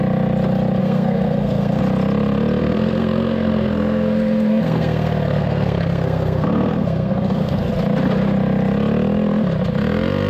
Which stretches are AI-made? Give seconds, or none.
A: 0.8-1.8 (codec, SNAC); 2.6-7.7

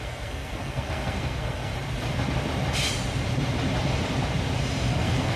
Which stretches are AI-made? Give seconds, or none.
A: 0.0-1.7 (codec, SNAC); 4.9-5.4

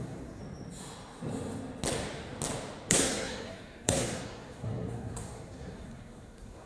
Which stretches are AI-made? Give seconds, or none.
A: 0.0-0.4 (codec, SNAC); 2.9-6.7